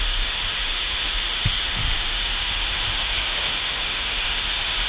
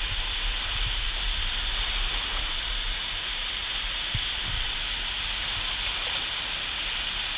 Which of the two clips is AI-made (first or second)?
first